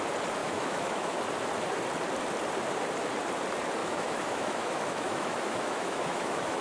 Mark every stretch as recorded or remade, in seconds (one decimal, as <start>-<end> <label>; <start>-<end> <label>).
0.0-0.4 recorded; 0.4-1.2 remade; 1.2-3.8 recorded; 3.8-6.6 remade